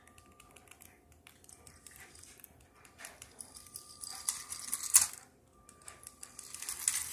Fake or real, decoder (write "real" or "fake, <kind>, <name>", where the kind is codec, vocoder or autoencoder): real